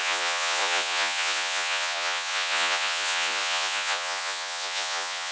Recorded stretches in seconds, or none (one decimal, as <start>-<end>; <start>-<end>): none